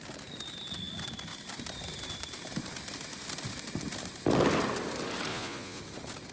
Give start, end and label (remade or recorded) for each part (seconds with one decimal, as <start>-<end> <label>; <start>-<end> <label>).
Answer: 0.0-5.3 recorded; 5.3-5.8 remade; 5.8-6.3 recorded